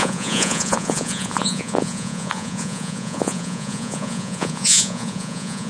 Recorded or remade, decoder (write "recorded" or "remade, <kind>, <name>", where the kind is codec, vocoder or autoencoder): remade, vocoder, Vocos